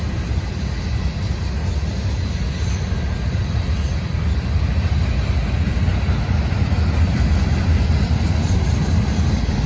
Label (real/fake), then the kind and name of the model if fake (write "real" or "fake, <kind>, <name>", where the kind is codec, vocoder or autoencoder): real